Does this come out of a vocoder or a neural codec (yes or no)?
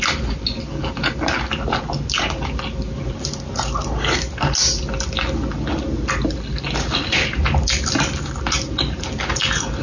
no